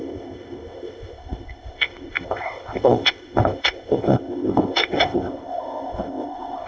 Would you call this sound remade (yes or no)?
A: yes